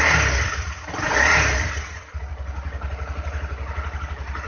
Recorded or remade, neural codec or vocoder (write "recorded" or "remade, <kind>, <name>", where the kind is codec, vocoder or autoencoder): recorded